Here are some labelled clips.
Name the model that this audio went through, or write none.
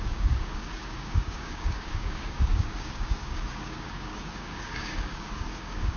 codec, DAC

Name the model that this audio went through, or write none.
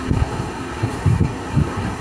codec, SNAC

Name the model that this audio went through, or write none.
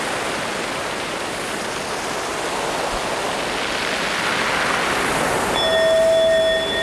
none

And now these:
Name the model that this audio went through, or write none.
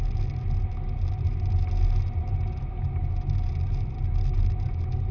none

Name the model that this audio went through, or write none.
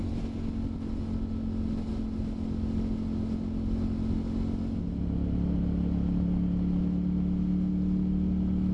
none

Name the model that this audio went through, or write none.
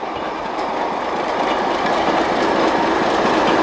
none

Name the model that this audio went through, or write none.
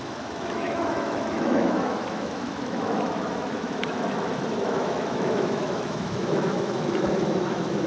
autoencoder, DAC-VAE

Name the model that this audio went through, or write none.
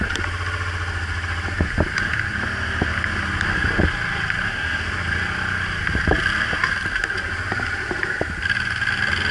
none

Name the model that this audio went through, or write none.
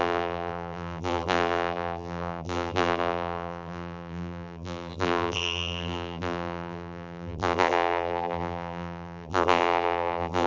vocoder, BigVGAN v2